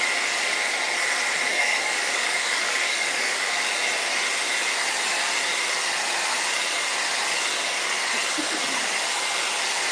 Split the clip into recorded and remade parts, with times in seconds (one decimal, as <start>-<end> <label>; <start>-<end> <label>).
0.0-1.5 recorded; 1.5-3.8 remade; 3.8-9.9 recorded